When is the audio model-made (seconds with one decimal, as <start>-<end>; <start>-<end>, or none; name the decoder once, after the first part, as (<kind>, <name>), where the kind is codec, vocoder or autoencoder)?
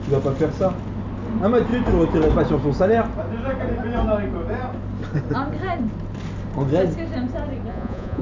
7.7-8.2 (vocoder, Vocos)